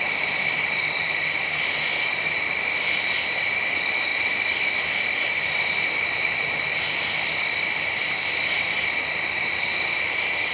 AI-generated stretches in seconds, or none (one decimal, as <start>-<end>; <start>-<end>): 0.0-10.5